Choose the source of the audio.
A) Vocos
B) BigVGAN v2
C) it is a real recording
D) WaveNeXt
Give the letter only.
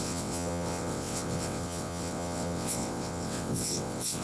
D